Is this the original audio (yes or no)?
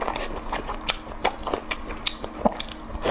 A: yes